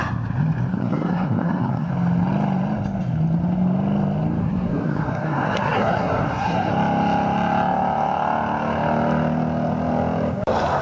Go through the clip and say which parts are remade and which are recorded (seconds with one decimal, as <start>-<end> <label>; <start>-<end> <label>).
0.0-0.7 recorded; 0.7-1.9 remade; 1.9-4.4 recorded; 4.4-6.7 remade; 6.7-10.8 recorded